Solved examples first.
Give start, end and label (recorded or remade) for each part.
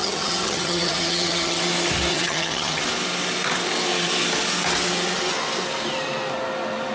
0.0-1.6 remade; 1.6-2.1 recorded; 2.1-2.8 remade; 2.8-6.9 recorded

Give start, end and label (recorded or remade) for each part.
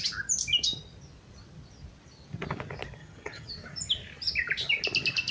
0.0-3.0 recorded; 3.0-3.5 remade; 3.5-5.3 recorded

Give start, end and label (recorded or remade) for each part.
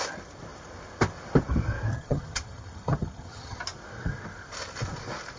0.0-1.9 recorded; 1.9-3.6 remade; 3.6-5.4 recorded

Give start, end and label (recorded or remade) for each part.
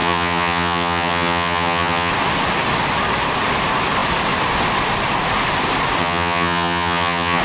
0.0-2.1 remade; 2.1-6.0 recorded; 6.0-7.4 remade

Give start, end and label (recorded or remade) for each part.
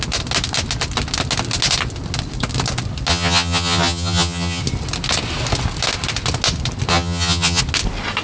0.0-3.1 recorded; 3.1-4.6 remade; 4.6-6.9 recorded; 6.9-7.6 remade; 7.6-8.2 recorded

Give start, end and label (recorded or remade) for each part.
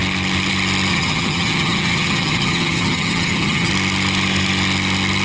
0.0-0.9 recorded; 0.9-3.7 remade; 3.7-5.2 recorded